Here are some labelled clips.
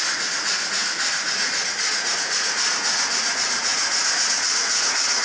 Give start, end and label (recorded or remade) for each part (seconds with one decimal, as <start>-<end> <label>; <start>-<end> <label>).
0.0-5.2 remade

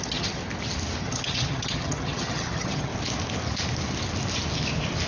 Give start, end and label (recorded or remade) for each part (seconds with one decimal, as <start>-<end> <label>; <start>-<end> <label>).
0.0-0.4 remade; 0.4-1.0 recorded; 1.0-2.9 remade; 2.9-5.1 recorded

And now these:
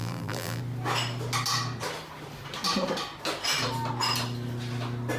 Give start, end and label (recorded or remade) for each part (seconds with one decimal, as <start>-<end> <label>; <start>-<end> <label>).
0.0-0.6 remade; 0.6-5.2 recorded

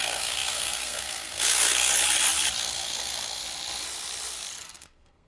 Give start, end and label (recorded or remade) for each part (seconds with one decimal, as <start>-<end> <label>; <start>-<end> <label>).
0.0-1.9 remade; 1.9-2.6 recorded; 2.6-3.4 remade; 3.4-4.6 recorded; 4.6-5.3 remade

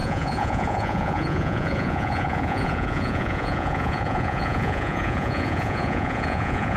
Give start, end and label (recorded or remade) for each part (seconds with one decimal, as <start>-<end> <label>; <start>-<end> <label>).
0.0-6.8 remade

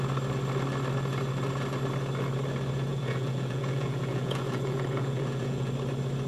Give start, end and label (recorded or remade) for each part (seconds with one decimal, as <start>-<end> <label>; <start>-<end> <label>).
0.0-2.9 recorded; 2.9-5.7 remade; 5.7-6.3 recorded